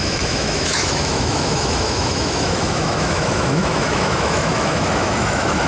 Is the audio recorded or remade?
remade